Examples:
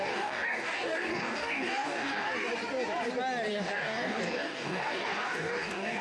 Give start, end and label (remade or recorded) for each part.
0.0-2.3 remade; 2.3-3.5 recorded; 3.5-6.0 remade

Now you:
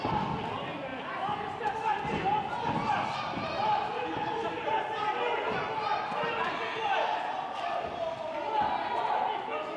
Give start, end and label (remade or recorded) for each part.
0.0-9.8 recorded

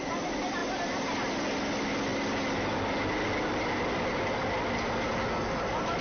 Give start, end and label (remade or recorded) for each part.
0.0-6.0 recorded

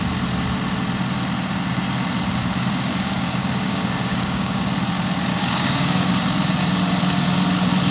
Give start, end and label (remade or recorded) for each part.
0.0-2.4 recorded; 2.4-4.6 remade; 4.6-5.3 recorded; 5.3-6.1 remade; 6.1-7.9 recorded

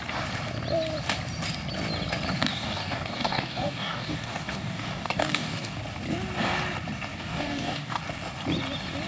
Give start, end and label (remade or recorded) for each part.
0.0-2.5 recorded; 2.5-5.8 remade; 5.8-7.1 recorded; 7.1-8.0 remade; 8.0-9.1 recorded

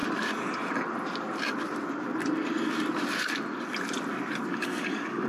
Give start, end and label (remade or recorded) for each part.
0.0-4.5 recorded; 4.5-5.3 remade

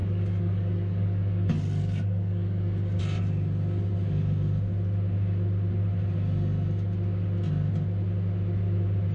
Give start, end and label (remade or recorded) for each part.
0.0-3.0 remade; 3.0-9.1 recorded